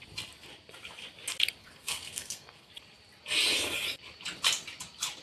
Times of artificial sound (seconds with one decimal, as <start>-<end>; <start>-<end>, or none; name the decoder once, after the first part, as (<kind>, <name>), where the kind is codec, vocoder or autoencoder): 1.6-2.7 (codec, SNAC)